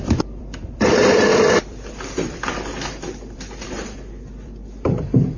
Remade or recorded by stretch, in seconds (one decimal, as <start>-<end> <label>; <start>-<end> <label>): 0.0-5.4 remade